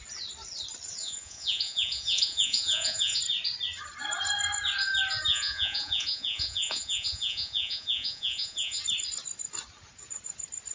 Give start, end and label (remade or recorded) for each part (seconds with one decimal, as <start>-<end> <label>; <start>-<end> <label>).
0.0-1.0 recorded; 1.0-3.2 remade; 3.2-5.3 recorded; 5.3-8.8 remade; 8.8-10.7 recorded